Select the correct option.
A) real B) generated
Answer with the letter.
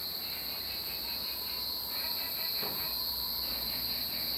A